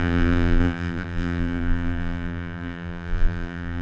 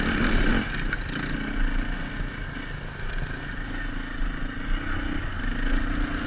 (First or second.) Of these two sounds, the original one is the second